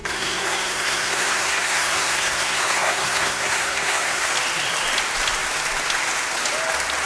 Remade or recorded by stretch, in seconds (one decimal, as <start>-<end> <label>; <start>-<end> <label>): 0.0-4.3 remade; 4.3-7.1 recorded